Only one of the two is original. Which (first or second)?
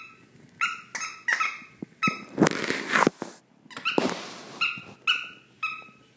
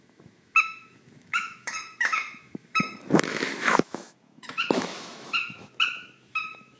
first